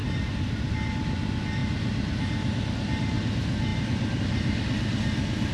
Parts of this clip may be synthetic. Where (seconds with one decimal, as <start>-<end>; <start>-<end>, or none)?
3.7-4.2